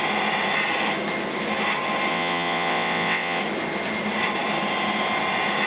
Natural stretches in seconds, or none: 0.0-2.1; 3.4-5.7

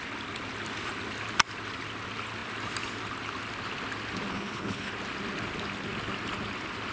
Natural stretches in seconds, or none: 0.0-4.3; 4.9-6.9